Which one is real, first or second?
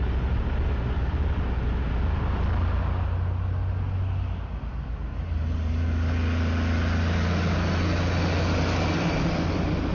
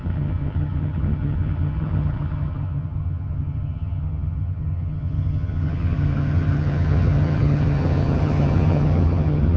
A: first